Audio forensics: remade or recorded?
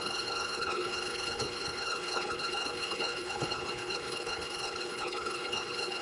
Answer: remade